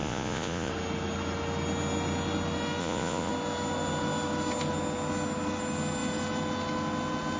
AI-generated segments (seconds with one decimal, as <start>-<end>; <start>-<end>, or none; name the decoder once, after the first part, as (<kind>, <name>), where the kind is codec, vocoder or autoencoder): 0.0-0.7 (vocoder, Vocos); 2.8-3.3